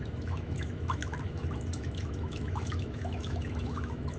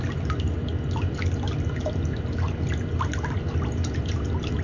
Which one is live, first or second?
second